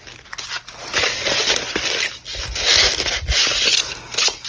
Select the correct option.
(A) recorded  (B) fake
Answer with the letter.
A